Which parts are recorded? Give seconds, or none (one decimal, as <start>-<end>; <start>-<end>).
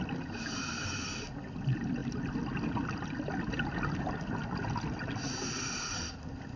0.0-6.6